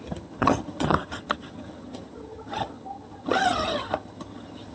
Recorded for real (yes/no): no